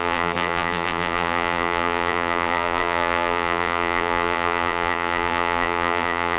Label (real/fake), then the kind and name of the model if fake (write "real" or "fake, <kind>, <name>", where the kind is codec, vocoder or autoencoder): fake, vocoder, BigVGAN v2